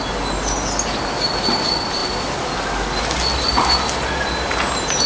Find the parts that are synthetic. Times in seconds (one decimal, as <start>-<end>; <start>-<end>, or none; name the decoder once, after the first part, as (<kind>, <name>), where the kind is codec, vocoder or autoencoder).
none